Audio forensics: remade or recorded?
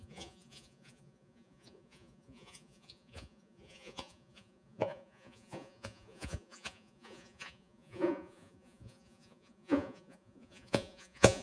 remade